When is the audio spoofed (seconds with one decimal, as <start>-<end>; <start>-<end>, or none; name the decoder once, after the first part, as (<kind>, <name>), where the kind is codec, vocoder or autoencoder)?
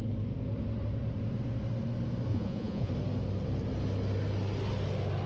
2.3-2.9 (vocoder, Vocos)